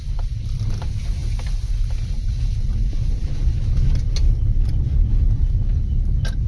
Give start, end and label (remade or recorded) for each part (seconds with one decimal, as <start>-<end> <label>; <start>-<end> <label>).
0.0-6.5 recorded